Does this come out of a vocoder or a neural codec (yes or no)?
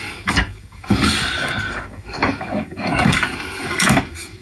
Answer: yes